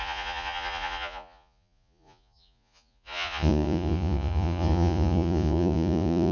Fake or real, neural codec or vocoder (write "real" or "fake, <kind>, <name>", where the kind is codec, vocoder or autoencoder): fake, vocoder, Vocos